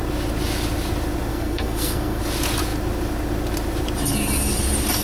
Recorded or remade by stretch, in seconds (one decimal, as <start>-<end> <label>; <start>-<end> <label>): 0.0-1.3 recorded; 1.3-2.2 remade; 2.2-5.0 recorded